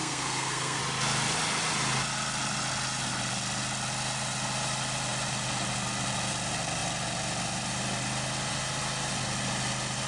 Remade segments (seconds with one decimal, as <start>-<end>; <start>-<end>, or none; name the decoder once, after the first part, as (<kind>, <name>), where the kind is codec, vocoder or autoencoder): 0.0-0.8 (codec, SNAC)